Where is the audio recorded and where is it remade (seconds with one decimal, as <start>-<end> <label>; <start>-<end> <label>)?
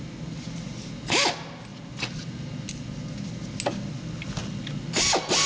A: 0.0-5.5 recorded